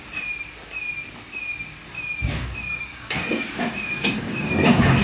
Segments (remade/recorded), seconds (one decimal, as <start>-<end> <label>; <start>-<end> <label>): 0.0-1.9 recorded; 1.9-5.0 remade